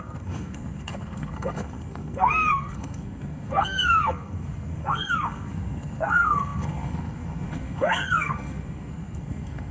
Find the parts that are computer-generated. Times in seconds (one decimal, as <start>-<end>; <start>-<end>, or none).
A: 0.0-9.7